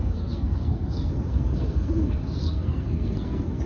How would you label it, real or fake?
fake